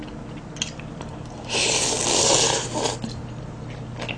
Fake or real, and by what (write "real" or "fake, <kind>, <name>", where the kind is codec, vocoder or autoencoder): real